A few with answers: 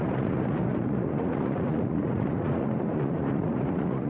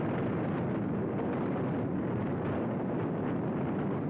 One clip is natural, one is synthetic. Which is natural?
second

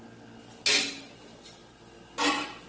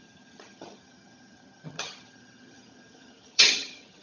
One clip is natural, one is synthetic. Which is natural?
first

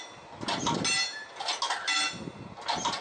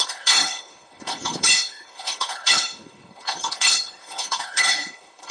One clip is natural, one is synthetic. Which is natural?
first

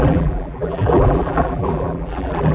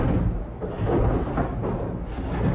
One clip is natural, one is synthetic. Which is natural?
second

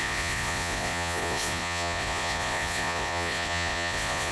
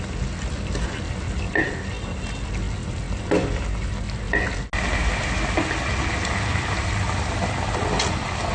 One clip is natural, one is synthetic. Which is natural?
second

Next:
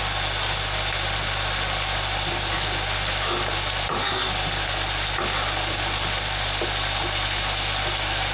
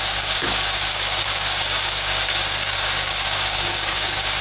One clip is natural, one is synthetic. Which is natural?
first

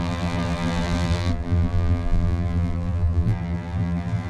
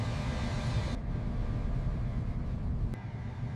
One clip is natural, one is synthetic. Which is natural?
second